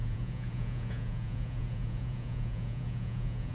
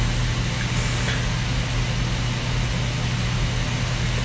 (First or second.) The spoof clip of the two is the first